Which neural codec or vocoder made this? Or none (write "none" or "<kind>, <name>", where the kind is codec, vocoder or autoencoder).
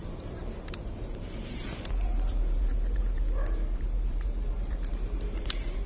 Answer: vocoder, BigVGAN v2